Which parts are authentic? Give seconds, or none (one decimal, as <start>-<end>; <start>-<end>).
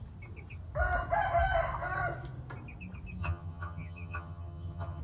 0.0-3.2